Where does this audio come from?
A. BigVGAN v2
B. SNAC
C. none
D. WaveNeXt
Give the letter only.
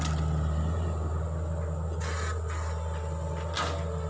C